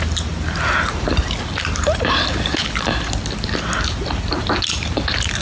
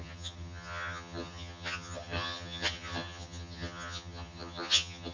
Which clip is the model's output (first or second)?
second